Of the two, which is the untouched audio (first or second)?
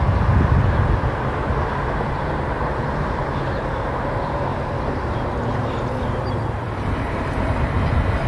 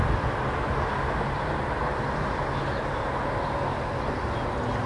second